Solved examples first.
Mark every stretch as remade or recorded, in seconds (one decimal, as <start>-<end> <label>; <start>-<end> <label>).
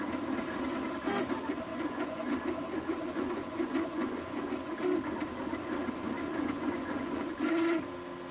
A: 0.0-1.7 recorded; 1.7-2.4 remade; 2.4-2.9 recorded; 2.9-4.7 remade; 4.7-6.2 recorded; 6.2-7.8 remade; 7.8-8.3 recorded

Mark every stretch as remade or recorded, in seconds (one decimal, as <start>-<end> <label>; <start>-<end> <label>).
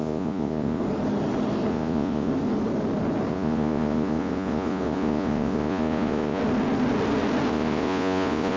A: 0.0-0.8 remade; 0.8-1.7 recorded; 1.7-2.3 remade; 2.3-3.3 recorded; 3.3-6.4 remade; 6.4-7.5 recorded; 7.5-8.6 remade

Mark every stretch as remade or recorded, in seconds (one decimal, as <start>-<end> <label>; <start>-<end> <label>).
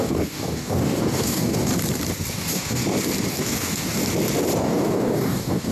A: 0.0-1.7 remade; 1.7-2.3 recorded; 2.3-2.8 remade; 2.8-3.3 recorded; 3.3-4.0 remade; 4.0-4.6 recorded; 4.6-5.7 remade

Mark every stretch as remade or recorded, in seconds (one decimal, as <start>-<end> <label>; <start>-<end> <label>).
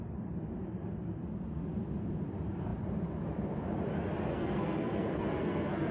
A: 0.0-4.3 recorded; 4.3-5.9 remade